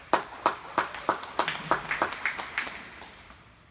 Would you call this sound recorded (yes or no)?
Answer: yes